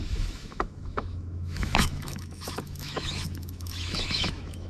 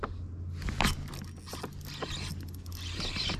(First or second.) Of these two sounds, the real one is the second